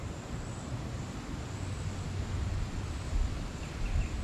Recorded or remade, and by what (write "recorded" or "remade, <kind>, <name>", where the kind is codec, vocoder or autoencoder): recorded